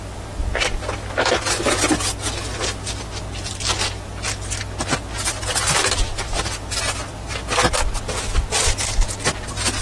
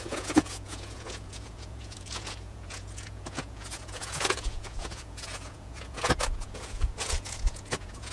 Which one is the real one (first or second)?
first